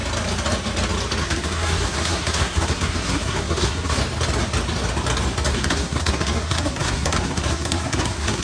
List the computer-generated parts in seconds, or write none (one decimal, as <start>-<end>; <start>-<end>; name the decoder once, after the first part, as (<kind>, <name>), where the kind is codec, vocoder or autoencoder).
1.2-4.0 (codec, SNAC); 5.5-8.4

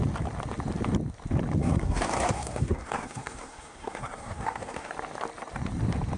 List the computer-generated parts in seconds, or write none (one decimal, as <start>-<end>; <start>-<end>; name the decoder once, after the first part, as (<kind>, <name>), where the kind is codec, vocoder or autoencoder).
1.6-4.9 (codec, SNAC)

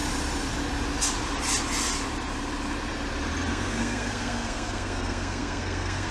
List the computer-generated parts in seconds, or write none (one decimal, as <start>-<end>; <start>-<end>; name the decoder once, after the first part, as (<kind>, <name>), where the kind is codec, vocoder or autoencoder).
3.5-6.1 (codec, SNAC)

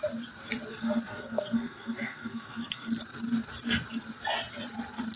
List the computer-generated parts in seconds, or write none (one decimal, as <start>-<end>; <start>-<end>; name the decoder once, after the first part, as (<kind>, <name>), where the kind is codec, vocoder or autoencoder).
0.7-3.0 (codec, SNAC)

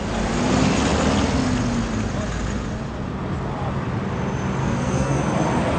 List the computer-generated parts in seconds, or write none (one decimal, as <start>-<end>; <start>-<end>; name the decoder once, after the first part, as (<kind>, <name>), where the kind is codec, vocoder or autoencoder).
4.6-5.2 (codec, SNAC)

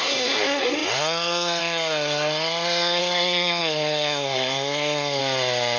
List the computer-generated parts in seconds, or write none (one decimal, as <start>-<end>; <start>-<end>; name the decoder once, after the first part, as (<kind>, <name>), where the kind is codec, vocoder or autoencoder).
0.0-5.2 (codec, SNAC)